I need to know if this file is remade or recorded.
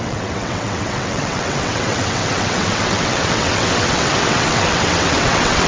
remade